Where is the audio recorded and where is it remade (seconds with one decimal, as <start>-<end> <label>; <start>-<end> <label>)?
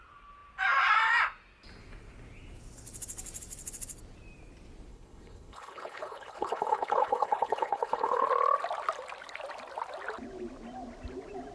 0.0-4.9 recorded; 4.9-8.3 remade; 8.3-11.5 recorded